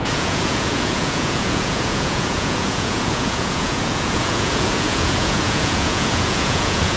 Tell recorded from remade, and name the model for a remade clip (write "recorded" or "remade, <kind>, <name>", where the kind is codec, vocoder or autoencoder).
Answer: remade, vocoder, Vocos